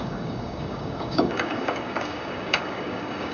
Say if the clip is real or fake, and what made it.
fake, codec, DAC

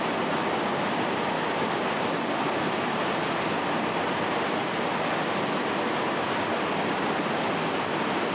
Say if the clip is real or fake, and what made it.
real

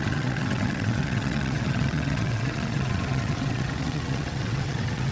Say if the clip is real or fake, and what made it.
fake, vocoder, WaveNeXt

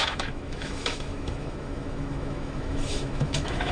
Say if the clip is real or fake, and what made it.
fake, autoencoder, DAC-VAE